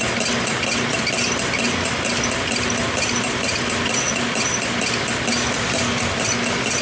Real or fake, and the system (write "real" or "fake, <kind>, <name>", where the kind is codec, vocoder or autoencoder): real